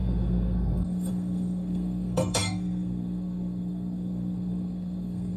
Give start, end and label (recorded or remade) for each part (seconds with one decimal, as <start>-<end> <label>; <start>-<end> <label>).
0.0-5.4 remade